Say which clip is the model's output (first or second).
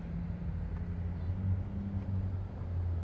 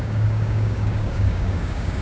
second